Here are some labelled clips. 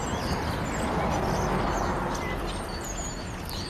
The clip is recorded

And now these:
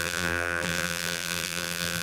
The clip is remade